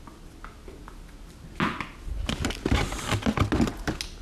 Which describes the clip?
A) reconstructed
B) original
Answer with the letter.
B